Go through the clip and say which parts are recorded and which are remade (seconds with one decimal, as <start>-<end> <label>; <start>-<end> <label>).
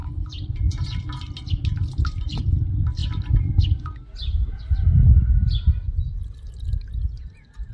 0.0-1.0 remade; 1.0-7.7 recorded